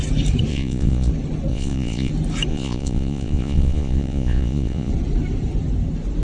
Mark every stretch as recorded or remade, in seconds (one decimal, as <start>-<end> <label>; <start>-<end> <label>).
0.0-0.5 recorded; 0.5-1.1 remade; 1.1-1.5 recorded; 1.5-2.1 remade; 2.1-2.5 recorded; 2.5-4.9 remade; 4.9-6.2 recorded